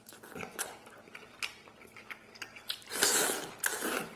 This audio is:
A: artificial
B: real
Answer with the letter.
B